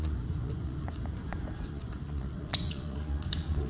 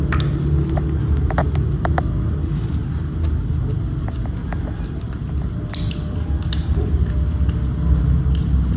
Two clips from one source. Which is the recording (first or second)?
second